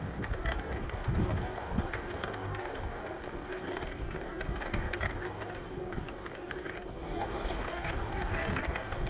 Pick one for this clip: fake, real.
fake